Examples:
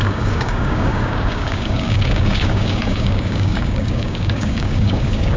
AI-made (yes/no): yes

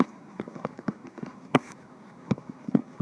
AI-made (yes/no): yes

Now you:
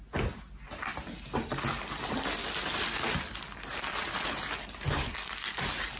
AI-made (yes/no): no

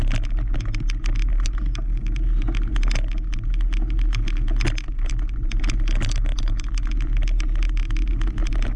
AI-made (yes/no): no